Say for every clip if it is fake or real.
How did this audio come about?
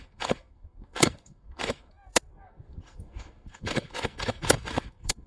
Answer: fake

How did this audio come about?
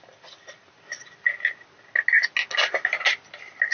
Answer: real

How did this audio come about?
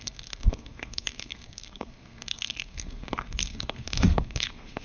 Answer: fake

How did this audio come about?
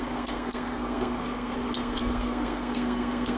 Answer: fake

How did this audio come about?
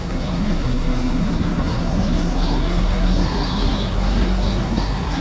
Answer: fake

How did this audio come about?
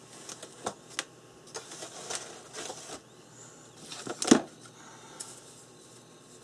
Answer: real